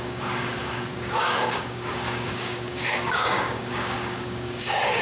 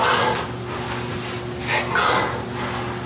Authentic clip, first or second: second